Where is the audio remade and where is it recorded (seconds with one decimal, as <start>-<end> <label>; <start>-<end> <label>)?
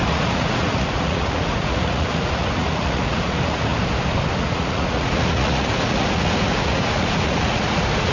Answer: 0.0-3.7 remade; 3.7-4.4 recorded; 4.4-8.1 remade